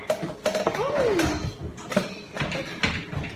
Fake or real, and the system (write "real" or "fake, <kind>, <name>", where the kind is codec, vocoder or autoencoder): real